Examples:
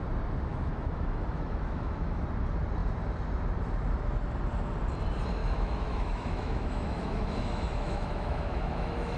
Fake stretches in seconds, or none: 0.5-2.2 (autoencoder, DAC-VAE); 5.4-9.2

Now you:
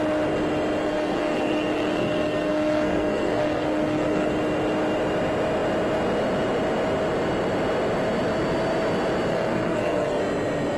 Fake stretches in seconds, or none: 0.8-4.3 (codec, SNAC); 9.3-10.2

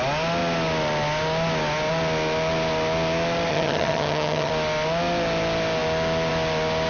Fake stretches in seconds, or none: 3.5-4.5 (vocoder, HiFi-GAN)

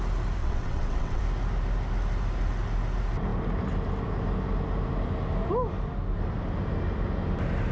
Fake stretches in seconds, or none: 0.4-1.2 (vocoder, WaveNeXt)

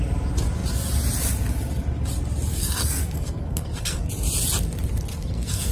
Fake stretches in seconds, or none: 2.5-4.1 (codec, SNAC); 5.1-5.7